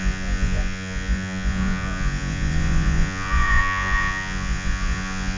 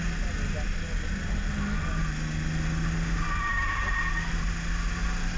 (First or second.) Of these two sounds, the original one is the second